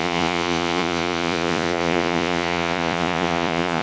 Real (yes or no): no